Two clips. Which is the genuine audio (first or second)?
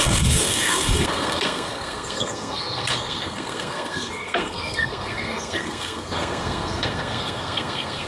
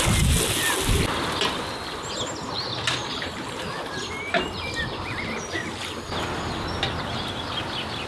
second